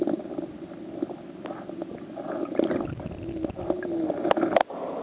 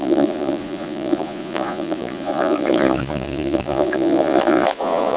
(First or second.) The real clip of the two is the first